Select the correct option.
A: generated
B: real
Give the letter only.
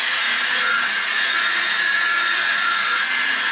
A